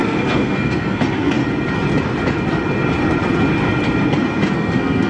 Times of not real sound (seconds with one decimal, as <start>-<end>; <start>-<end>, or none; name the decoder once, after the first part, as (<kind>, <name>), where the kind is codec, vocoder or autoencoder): 0.0-1.4 (codec, SNAC); 4.5-5.1